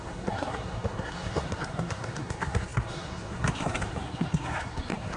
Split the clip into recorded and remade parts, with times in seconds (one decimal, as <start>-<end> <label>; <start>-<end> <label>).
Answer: 0.0-5.2 remade